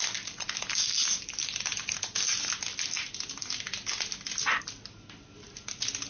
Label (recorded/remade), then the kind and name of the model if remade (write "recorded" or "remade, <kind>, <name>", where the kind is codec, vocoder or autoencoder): recorded